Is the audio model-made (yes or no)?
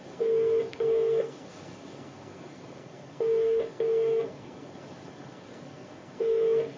yes